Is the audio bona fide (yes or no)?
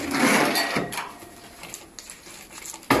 yes